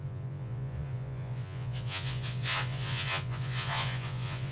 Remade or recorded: remade